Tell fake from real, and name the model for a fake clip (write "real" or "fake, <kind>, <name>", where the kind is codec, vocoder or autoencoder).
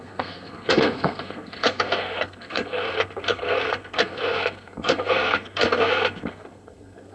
fake, codec, SNAC